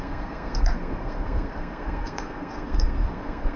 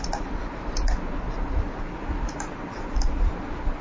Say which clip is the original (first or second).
second